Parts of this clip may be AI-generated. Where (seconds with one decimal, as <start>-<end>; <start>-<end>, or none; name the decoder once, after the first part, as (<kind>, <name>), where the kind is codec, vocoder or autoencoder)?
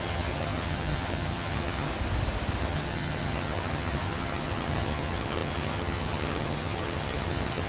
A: 0.0-1.9 (vocoder, HiFi-GAN); 2.6-7.7